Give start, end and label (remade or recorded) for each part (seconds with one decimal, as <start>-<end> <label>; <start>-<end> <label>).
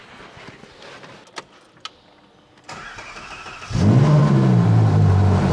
0.0-4.2 recorded; 4.2-5.5 remade